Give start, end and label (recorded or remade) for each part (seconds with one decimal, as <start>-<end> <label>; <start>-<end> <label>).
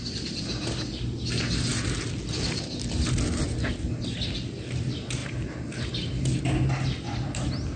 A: 0.0-7.8 recorded